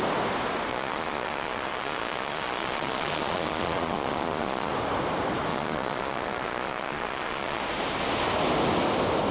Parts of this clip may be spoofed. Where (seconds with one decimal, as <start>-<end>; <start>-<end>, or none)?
0.7-4.7; 5.5-7.6